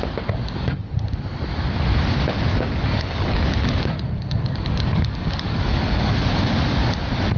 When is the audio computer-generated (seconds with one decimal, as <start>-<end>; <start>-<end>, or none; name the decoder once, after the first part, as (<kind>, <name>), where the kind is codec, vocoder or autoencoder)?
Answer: 2.5-6.1 (codec, DAC)